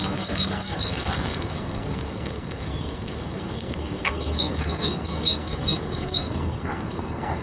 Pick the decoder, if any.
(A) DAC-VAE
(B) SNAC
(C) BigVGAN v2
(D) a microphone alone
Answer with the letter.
B